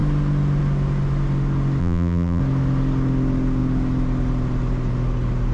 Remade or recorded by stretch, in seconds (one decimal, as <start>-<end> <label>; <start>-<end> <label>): 0.0-1.8 recorded; 1.8-2.4 remade; 2.4-5.5 recorded